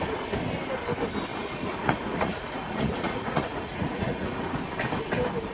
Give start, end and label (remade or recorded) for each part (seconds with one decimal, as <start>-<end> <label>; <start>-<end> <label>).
0.0-1.3 recorded; 1.3-4.6 remade; 4.6-5.5 recorded